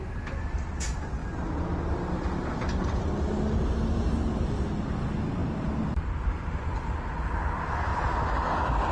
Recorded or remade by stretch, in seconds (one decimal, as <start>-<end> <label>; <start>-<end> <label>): 0.0-5.4 recorded; 5.4-6.7 remade; 6.7-8.9 recorded